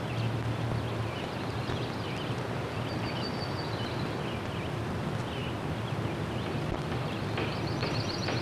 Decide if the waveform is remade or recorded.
recorded